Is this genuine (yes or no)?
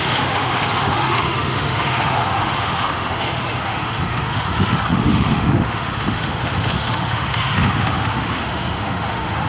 no